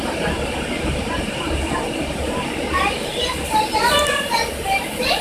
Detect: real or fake fake